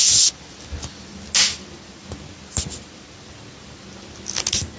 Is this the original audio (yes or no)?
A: yes